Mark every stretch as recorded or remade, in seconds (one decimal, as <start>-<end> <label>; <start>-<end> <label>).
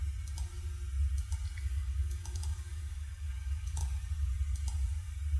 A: 0.0-1.6 recorded; 1.6-3.8 remade; 3.8-5.4 recorded